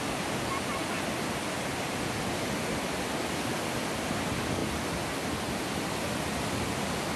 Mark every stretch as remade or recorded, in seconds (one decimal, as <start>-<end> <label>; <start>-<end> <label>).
0.0-7.2 recorded